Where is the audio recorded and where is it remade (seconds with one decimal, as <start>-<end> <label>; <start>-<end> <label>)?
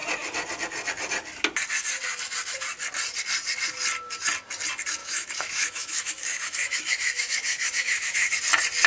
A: 0.0-5.0 recorded; 5.0-8.4 remade; 8.4-8.9 recorded